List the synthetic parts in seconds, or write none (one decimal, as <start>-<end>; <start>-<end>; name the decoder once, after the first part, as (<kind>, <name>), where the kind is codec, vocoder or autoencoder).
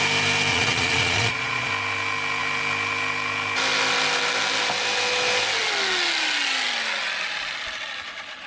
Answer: 0.5-1.7 (vocoder, Vocos)